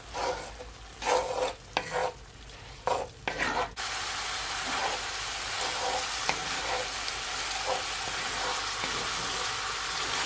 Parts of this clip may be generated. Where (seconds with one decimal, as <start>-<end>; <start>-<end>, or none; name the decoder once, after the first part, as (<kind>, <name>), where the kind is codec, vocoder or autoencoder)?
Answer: 2.0-3.2 (vocoder, BigVGAN v2); 6.4-7.0

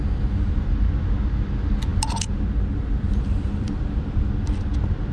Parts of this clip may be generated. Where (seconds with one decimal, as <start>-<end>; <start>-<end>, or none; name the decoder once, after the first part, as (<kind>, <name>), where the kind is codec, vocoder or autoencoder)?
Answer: 1.9-4.3 (vocoder, BigVGAN v2)

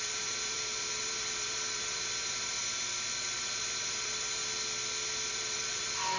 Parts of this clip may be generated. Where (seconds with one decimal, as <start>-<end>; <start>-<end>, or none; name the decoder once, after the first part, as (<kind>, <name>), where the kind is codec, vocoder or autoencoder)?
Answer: 0.0-4.4 (vocoder, BigVGAN v2); 5.3-6.2

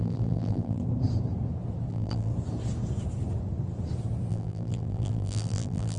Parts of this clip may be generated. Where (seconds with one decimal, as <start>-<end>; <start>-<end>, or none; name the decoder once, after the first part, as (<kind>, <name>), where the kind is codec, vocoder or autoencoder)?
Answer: 0.0-0.8 (vocoder, BigVGAN v2); 1.9-2.3; 4.3-6.0

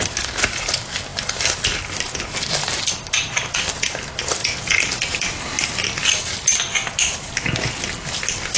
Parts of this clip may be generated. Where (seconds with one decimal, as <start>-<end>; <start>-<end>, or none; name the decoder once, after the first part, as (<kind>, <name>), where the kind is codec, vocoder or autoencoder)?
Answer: none

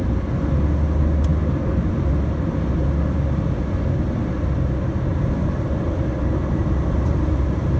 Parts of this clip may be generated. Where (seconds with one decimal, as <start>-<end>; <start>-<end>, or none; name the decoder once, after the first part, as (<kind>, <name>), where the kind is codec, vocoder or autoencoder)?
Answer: 5.1-6.0 (vocoder, BigVGAN v2); 6.6-7.3

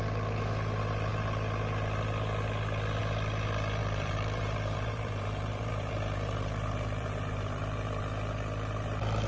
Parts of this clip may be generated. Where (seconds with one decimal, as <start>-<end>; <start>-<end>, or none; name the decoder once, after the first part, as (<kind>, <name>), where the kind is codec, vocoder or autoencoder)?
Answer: 3.8-8.0 (vocoder, BigVGAN v2)